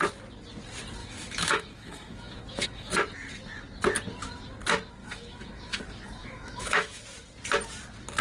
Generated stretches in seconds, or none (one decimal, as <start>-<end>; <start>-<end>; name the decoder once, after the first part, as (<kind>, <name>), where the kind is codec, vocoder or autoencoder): 1.0-2.9 (autoencoder, DAC-VAE); 5.0-5.8; 6.2-7.0